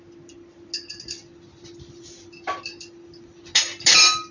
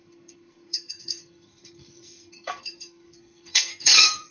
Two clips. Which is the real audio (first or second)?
first